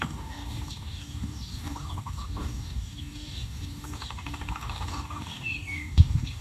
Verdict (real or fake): fake